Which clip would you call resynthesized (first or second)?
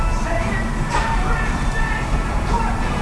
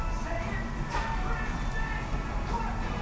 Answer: first